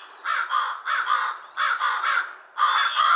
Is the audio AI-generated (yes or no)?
no